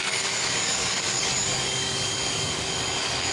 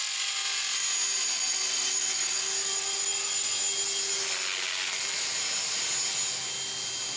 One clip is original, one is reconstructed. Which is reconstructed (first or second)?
first